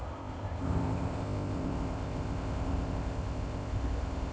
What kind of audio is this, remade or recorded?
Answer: remade